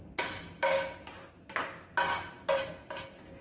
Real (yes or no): yes